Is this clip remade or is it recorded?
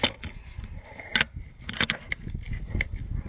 recorded